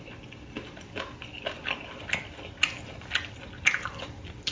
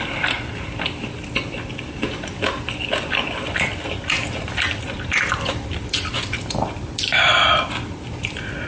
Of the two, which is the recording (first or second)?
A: first